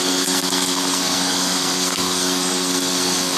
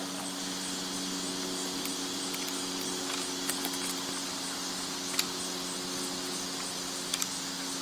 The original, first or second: second